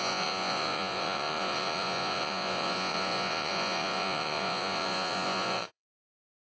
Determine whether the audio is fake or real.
fake